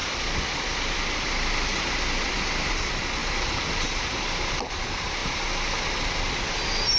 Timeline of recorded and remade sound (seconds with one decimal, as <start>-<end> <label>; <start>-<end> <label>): 0.0-2.7 remade; 2.7-7.0 recorded